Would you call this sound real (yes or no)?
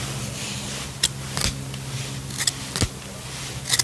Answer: yes